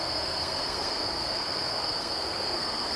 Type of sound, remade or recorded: remade